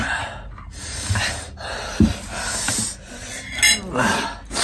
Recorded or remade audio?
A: recorded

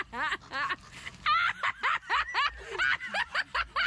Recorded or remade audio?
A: recorded